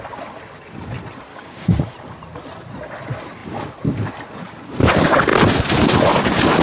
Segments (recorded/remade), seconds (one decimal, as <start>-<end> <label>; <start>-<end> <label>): 0.0-1.3 recorded; 1.3-1.8 remade; 1.8-6.6 recorded